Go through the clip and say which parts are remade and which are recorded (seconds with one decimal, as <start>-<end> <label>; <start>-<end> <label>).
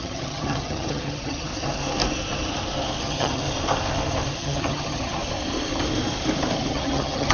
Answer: 0.0-1.5 remade; 1.5-3.0 recorded; 3.0-3.4 remade; 3.4-4.3 recorded; 4.3-5.2 remade; 5.2-6.7 recorded; 6.7-7.3 remade